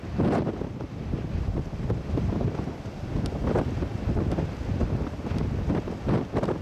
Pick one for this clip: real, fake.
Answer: real